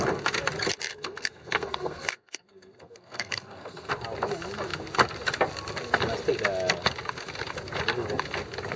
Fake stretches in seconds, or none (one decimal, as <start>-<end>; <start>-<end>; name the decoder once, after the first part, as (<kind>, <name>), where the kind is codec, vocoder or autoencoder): 0.9-3.9 (codec, SNAC)